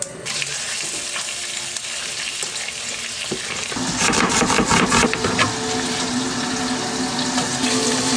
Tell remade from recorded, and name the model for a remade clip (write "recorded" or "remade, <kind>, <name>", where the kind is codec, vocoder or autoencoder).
recorded